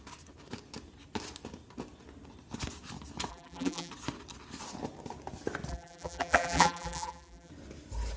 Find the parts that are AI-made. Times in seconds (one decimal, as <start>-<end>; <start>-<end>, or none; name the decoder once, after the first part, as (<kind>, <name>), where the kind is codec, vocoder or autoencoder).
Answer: 3.3-3.9 (vocoder, BigVGAN v2); 5.7-7.5